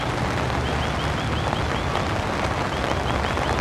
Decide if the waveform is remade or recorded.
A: recorded